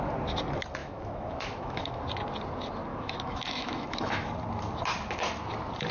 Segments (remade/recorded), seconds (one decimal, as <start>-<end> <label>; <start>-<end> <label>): 0.0-0.8 recorded; 0.8-2.0 remade; 2.0-2.9 recorded; 2.9-4.3 remade; 4.3-5.9 recorded